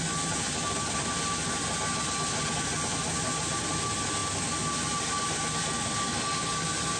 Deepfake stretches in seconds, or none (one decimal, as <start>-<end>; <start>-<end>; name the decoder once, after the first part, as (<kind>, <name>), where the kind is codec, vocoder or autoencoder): none